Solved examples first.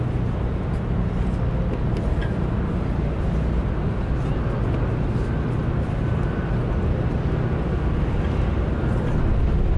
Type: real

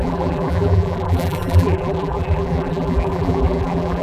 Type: fake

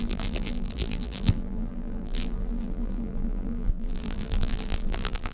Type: fake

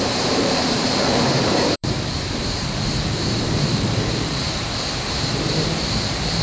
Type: fake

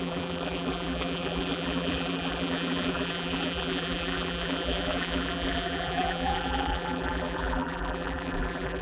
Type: fake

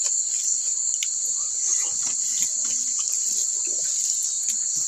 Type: real